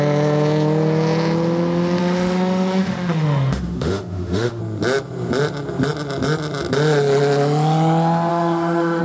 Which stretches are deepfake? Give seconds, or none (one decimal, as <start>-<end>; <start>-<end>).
2.0-4.6; 8.3-9.0